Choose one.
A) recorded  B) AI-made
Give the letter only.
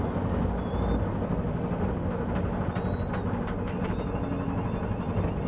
A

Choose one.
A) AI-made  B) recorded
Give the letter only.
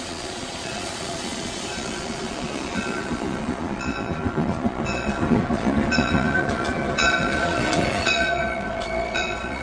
A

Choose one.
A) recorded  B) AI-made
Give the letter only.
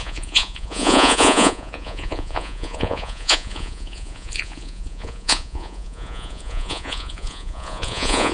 B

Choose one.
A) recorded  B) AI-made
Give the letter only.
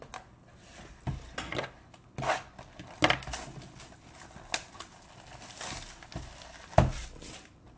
A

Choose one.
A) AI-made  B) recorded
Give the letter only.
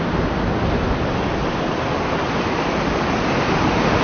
B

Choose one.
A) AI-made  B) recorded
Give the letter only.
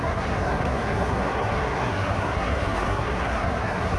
A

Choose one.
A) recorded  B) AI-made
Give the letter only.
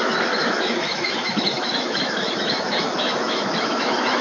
B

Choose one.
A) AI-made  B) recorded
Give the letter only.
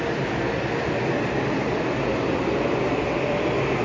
B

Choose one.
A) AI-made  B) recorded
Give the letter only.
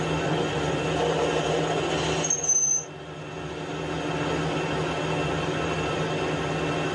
B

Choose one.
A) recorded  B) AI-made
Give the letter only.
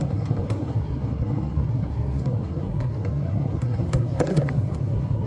B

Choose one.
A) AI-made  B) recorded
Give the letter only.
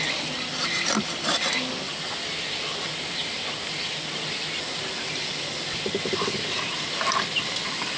B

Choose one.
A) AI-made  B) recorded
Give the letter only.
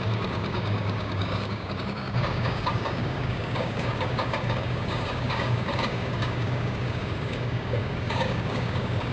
A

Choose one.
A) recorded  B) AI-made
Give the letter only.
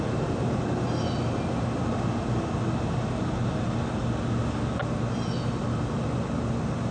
A